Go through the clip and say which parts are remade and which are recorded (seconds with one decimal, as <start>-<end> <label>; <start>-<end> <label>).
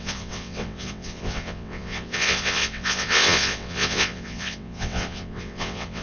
0.0-6.0 remade